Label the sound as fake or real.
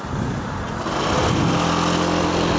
real